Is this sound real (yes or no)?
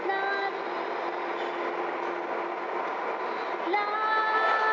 yes